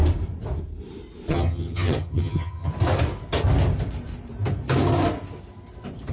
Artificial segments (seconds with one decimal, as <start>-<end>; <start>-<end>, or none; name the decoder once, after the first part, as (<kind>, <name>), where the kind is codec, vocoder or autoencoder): 1.3-2.7 (vocoder, HiFi-GAN)

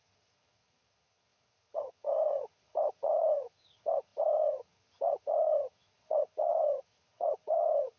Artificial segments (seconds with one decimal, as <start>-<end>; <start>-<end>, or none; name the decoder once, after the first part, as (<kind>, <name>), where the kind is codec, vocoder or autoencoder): 0.0-8.0 (vocoder, HiFi-GAN)